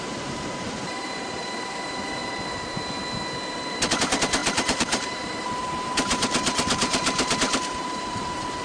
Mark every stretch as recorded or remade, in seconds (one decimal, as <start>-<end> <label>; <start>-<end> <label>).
0.0-2.2 remade; 2.2-3.9 recorded; 3.9-8.6 remade